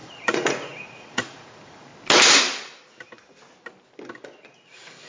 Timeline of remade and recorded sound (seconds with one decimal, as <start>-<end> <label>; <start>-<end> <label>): 0.0-1.9 remade; 1.9-4.4 recorded; 4.4-5.1 remade